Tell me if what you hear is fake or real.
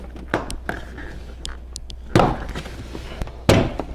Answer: real